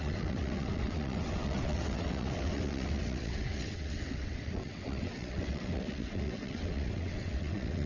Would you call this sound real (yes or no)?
no